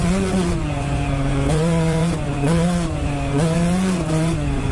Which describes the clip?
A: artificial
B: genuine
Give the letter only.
A